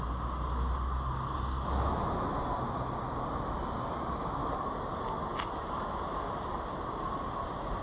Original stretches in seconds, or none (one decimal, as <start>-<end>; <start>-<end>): 0.0-7.8